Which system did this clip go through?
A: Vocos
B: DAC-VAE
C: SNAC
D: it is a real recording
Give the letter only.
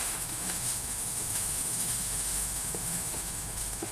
B